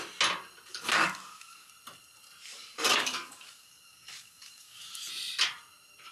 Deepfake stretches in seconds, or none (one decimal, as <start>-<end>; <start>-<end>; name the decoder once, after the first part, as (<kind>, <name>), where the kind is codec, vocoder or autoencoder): 0.7-1.7 (codec, DAC); 2.5-5.1